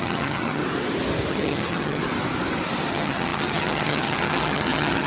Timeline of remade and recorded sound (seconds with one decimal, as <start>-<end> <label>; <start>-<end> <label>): 0.0-0.6 remade; 0.6-1.3 recorded; 1.3-2.0 remade; 2.0-2.9 recorded; 2.9-5.1 remade